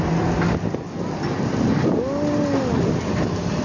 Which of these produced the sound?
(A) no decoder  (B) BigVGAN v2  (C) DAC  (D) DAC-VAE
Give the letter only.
A